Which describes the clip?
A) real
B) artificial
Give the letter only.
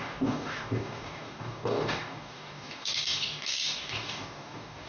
B